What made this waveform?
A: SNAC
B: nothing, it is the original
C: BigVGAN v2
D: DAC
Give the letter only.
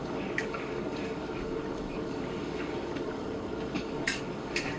D